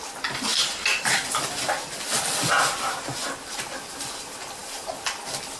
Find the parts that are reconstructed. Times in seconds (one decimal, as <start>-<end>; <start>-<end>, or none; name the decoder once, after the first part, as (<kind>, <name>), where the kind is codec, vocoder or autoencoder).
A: none